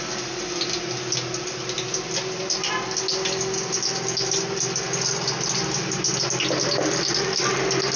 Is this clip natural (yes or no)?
yes